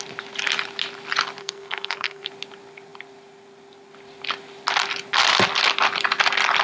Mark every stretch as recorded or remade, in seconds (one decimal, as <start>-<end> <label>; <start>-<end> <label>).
0.0-1.4 recorded; 1.4-2.3 remade; 2.3-6.6 recorded